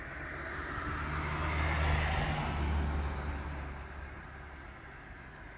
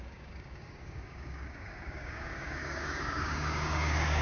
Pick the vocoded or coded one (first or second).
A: second